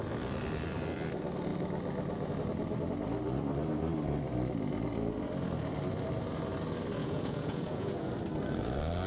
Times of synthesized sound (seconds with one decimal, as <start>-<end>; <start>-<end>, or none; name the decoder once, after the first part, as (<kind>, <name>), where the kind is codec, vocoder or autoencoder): 7.0-8.1 (vocoder, Vocos)